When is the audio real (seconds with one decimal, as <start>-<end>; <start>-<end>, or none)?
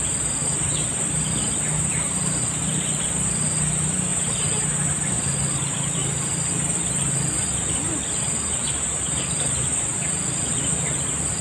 0.0-11.4